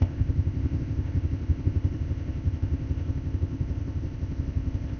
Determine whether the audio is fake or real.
fake